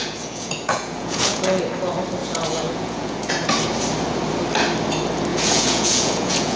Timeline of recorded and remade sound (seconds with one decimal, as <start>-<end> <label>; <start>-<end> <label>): 0.0-1.6 remade; 1.6-2.2 recorded; 2.2-3.3 remade; 3.3-5.3 recorded; 5.3-6.6 remade